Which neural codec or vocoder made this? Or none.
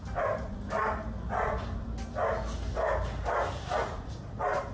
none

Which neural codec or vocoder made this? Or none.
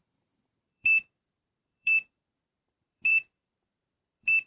vocoder, BigVGAN v2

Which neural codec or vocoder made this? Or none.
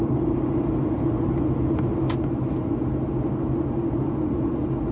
none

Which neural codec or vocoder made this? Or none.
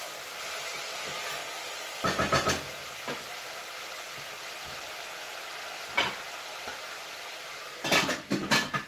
none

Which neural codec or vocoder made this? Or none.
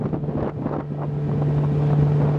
none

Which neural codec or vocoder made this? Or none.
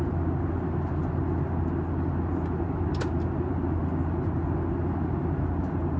none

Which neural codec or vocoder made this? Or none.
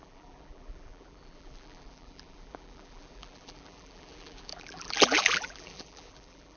vocoder, BigVGAN v2